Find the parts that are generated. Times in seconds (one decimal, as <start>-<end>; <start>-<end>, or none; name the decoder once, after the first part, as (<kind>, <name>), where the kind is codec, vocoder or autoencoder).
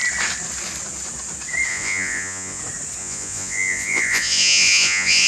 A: 1.7-2.6 (vocoder, Vocos); 3.0-5.3